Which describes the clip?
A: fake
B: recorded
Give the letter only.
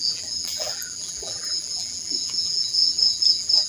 A